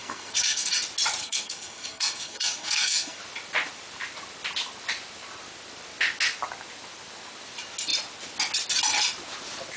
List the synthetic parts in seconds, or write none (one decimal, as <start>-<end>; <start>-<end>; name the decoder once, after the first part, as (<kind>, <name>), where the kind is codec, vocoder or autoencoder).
0.0-0.7 (codec, SNAC); 1.2-3.2

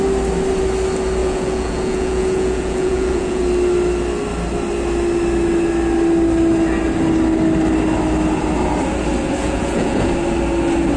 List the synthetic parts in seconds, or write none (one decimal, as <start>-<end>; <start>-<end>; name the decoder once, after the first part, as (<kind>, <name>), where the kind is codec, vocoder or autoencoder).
1.2-3.4 (vocoder, Vocos); 9.4-10.1

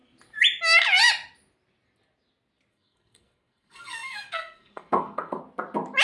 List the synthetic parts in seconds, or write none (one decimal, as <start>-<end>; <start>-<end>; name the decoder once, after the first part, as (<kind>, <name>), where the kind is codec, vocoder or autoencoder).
2.7-5.4 (codec, SNAC)

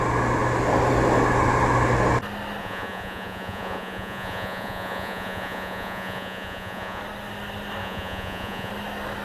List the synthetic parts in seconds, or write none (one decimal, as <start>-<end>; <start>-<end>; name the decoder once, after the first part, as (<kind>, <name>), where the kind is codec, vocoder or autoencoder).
2.6-7.0 (vocoder, Vocos); 7.8-8.7

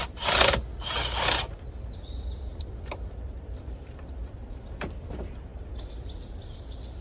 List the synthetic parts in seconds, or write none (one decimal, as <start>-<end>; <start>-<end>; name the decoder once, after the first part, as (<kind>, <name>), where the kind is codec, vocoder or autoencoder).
0.0-5.5 (vocoder, BigVGAN v2)

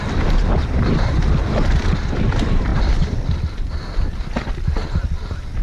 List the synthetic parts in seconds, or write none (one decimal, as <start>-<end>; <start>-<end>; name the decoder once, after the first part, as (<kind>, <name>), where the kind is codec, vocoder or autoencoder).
0.7-1.6 (vocoder, BigVGAN v2); 2.7-4.4

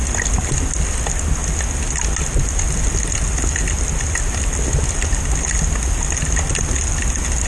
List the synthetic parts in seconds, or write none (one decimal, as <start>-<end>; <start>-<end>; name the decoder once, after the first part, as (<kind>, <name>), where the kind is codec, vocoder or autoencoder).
none